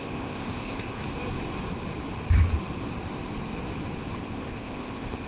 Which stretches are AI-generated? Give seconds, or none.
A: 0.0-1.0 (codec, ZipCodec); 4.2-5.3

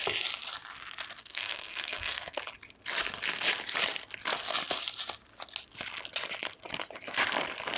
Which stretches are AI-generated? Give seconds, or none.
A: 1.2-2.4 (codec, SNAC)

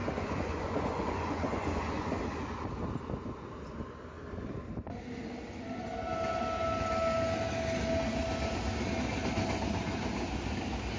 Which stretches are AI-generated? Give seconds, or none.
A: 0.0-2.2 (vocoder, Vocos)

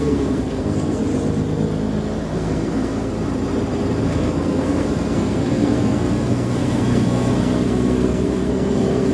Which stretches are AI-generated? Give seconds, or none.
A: 0.0-1.0 (codec, SNAC); 2.3-3.1; 4.0-9.1

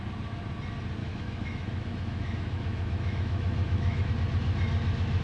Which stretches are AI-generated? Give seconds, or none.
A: 1.0-4.1 (autoencoder, DAC-VAE)

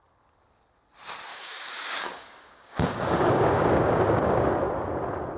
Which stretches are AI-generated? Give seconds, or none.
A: 1.3-4.5 (codec, DAC)

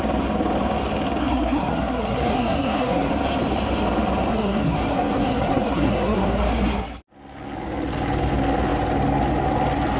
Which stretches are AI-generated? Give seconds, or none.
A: 1.2-3.1 (codec, SNAC); 4.3-7.0